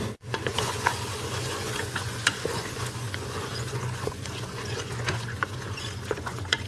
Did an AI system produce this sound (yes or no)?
yes